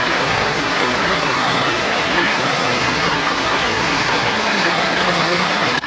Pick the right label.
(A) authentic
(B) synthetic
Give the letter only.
B